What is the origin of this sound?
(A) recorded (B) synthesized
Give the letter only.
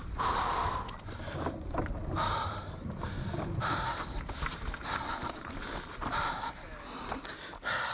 A